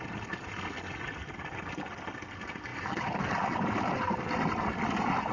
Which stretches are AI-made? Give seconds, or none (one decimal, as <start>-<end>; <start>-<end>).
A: none